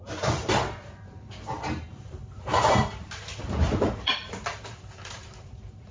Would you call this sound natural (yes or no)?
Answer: no